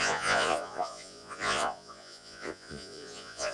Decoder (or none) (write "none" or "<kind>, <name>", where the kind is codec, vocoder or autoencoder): vocoder, Vocos